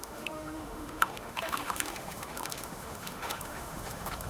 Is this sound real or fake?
fake